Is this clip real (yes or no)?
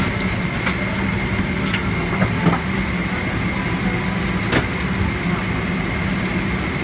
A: yes